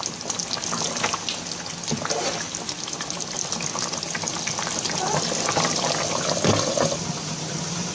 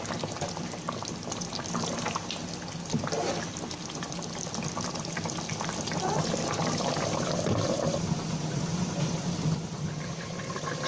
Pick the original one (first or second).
first